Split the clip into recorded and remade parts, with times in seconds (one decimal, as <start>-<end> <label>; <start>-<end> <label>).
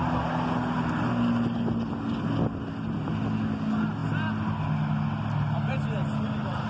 0.0-6.7 recorded